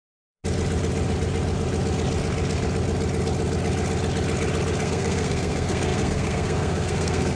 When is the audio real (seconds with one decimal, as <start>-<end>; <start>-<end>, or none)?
0.4-4.8